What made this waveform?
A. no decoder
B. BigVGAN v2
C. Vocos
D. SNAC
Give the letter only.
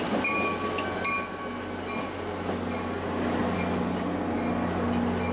A